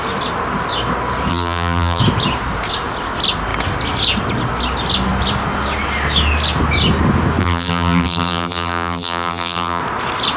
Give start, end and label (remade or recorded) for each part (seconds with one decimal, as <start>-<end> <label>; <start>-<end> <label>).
0.0-1.3 recorded; 1.3-2.0 remade; 2.0-7.4 recorded; 7.4-9.8 remade; 9.8-10.4 recorded